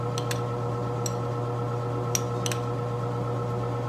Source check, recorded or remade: recorded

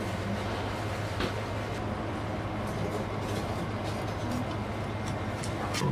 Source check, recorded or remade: recorded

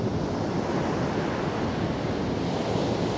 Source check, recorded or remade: recorded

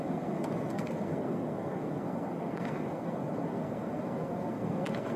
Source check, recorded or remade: remade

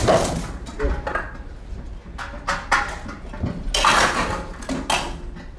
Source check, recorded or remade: recorded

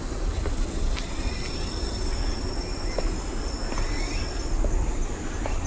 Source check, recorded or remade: recorded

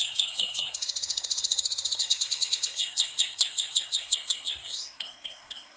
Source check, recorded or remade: remade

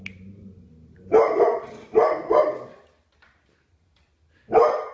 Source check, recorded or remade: recorded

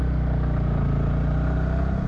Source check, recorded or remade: recorded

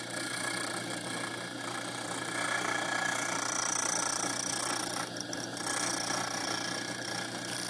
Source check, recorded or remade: recorded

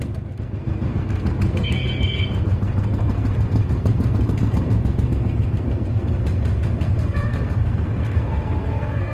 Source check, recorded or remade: remade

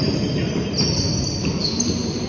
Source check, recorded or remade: recorded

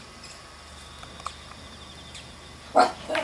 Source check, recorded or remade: recorded